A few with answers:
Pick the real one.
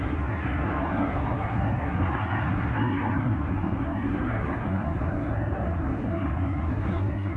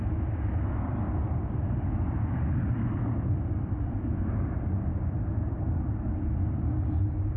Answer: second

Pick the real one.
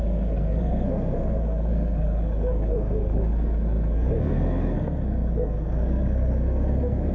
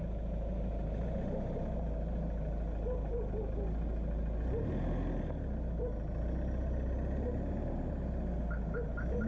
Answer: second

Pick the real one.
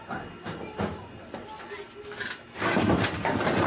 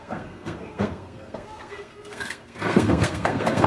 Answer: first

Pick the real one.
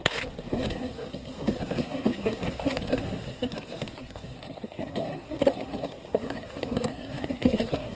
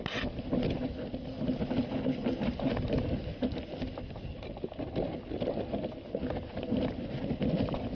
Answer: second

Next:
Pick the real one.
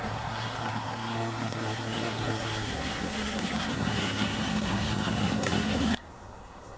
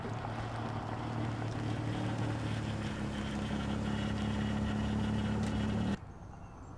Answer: second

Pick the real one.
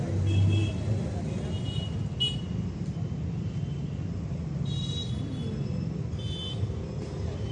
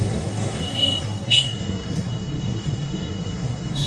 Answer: first